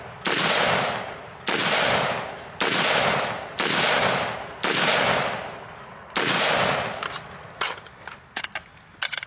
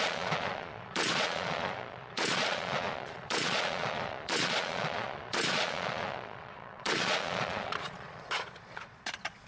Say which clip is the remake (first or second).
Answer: second